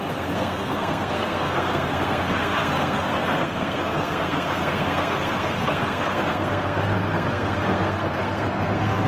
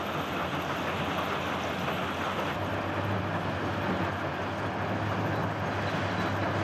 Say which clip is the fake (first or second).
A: first